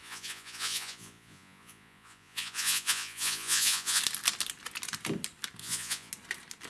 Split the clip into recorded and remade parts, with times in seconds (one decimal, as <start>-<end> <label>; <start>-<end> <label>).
0.0-4.0 remade; 4.0-5.6 recorded; 5.6-6.1 remade; 6.1-6.7 recorded